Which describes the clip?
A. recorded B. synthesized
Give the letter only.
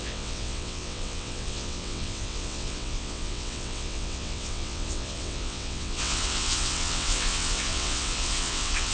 B